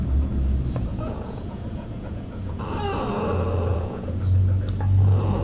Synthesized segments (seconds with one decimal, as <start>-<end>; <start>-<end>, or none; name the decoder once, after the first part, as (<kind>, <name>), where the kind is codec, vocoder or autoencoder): 0.9-2.6 (vocoder, Vocos); 3.7-4.2